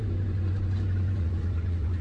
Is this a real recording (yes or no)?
no